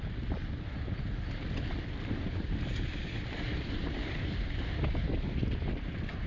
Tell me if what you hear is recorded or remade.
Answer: recorded